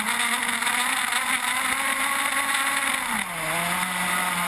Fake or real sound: real